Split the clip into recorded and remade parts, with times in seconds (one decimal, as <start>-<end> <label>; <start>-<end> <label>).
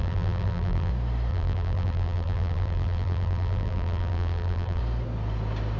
0.0-0.9 remade; 0.9-1.3 recorded; 1.3-4.8 remade; 4.8-5.8 recorded